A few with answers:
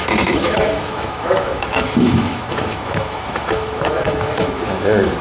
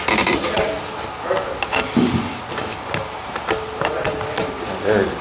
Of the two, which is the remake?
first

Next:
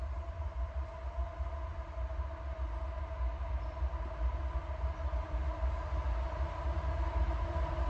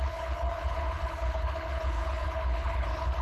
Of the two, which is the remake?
second